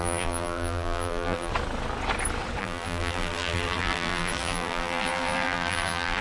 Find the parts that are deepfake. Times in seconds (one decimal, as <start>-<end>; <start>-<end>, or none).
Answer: 0.0-1.5; 2.6-6.2

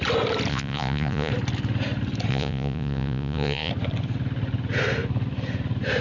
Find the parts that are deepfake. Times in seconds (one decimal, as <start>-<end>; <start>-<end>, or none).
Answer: 0.5-1.3; 2.3-3.7

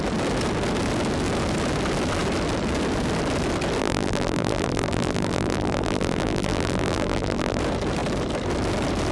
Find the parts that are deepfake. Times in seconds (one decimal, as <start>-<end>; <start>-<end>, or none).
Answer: 3.8-7.6

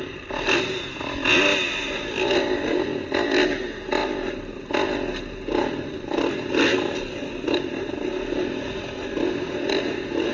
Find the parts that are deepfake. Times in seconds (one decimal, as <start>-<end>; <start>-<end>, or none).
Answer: 4.0-4.7

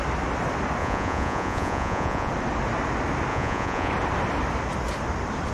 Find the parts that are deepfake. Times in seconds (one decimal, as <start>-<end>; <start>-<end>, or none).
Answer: 0.8-2.3; 3.3-3.9

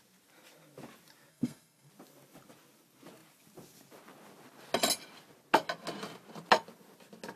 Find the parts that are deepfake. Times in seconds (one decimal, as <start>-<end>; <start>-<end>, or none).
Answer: 1.3-1.9

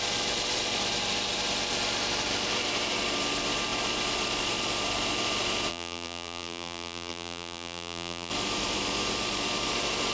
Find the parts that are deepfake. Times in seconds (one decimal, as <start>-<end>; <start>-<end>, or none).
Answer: 5.7-8.3